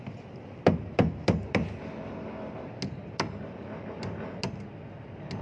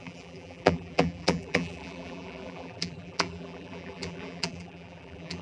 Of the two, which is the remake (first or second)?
second